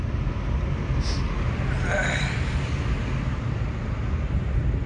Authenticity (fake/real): real